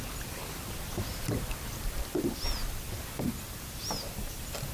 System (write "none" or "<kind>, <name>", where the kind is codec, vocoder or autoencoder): none